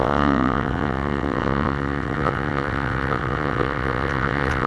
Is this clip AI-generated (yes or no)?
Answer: yes